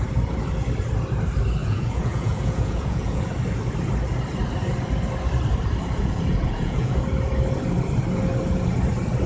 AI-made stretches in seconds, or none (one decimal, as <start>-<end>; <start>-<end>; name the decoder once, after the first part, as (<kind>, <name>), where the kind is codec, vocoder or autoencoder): 1.6-3.2 (vocoder, Vocos); 6.0-7.0